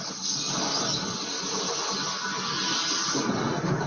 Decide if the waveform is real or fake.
real